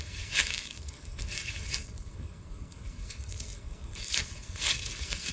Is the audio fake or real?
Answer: fake